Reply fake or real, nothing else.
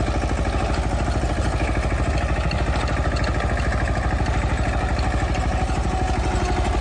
real